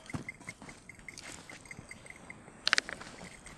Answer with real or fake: real